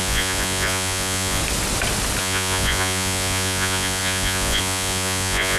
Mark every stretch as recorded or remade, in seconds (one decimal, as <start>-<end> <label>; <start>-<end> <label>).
0.0-1.4 remade; 1.4-2.2 recorded; 2.2-5.6 remade